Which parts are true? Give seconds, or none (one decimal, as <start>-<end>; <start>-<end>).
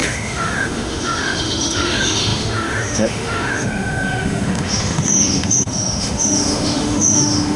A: none